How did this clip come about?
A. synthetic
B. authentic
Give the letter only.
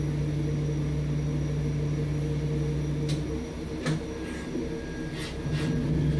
B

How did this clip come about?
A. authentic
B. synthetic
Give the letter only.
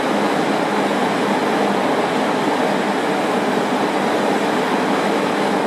A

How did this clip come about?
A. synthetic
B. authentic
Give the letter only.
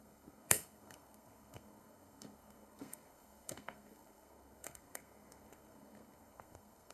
A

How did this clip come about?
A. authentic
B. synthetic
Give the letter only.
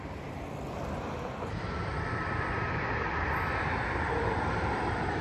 B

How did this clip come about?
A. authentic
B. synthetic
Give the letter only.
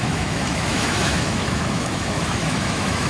B